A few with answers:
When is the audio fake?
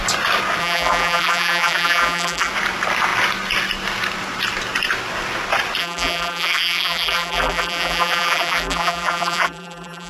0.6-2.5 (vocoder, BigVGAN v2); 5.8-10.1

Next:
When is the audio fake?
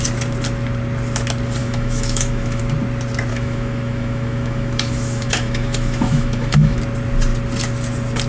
1.6-2.6 (autoencoder, DAC-VAE); 3.3-6.8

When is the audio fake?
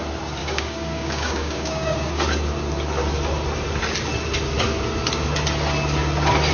0.4-2.1 (codec, DAC)